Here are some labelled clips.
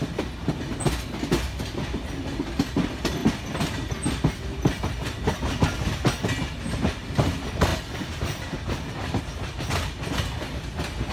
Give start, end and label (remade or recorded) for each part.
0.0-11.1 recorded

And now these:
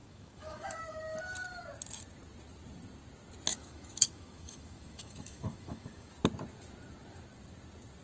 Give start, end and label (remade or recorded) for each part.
0.0-0.8 remade; 0.8-3.5 recorded; 3.5-6.1 remade; 6.1-8.0 recorded